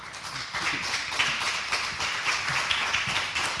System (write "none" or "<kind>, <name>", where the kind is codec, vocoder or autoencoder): none